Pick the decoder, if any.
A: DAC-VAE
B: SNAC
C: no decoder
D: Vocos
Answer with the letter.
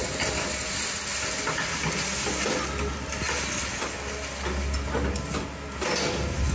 C